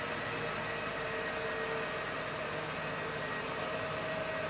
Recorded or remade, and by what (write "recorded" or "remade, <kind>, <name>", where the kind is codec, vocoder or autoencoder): recorded